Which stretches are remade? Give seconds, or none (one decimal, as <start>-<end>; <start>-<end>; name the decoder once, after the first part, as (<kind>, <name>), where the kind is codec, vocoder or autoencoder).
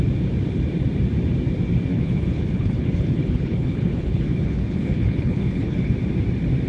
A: 1.9-5.9 (codec, HILCodec)